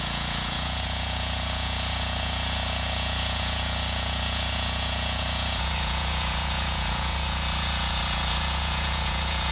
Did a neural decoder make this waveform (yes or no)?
yes